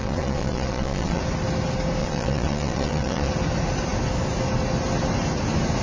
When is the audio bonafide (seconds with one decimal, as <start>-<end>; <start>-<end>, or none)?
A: 1.2-2.0; 3.3-5.8